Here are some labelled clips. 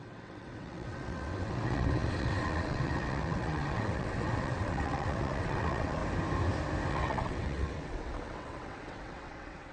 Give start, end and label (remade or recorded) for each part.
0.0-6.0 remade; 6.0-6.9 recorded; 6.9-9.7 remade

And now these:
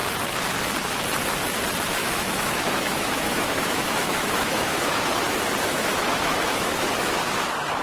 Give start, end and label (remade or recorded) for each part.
0.0-2.0 recorded; 2.0-5.2 remade; 5.2-5.7 recorded; 5.7-7.2 remade; 7.2-7.8 recorded

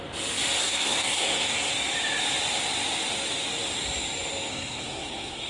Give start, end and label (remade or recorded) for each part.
0.0-0.6 recorded; 0.6-1.7 remade; 1.7-4.5 recorded; 4.5-5.5 remade

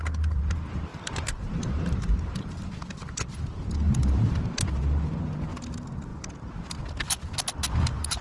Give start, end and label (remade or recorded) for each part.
0.0-0.9 recorded; 0.9-4.4 remade; 4.4-6.1 recorded; 6.1-6.8 remade; 6.8-8.2 recorded